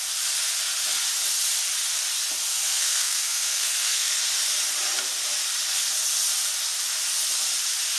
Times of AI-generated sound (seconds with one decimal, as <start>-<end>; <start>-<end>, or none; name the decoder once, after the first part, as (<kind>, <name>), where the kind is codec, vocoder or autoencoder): 2.5-4.2 (codec, SNAC)